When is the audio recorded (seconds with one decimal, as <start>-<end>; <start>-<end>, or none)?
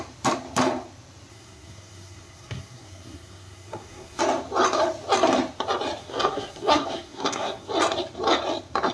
0.0-1.3; 4.2-6.0; 7.7-8.9